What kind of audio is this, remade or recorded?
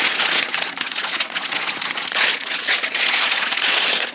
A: remade